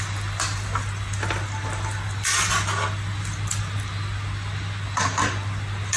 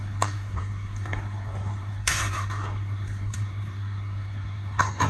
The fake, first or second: second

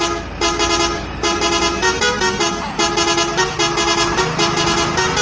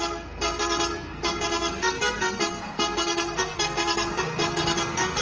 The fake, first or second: second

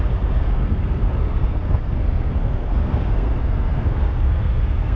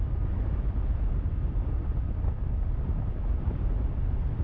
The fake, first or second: first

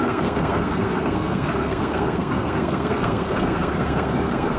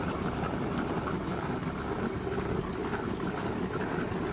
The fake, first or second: first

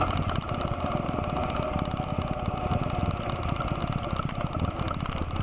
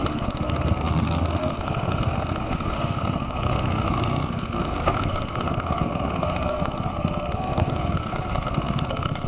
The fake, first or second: second